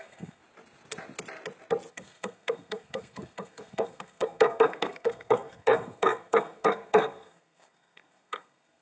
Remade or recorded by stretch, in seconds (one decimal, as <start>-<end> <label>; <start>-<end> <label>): 0.0-0.4 remade; 0.4-1.9 recorded; 1.9-8.8 remade